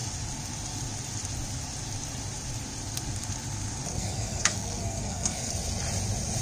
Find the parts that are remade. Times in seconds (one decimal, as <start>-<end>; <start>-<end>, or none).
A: 3.9-5.5